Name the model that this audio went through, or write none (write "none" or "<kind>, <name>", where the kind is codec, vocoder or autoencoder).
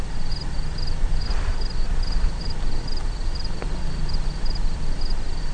none